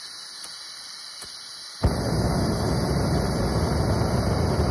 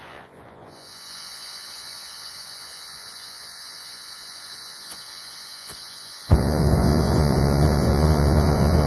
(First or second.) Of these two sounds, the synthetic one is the second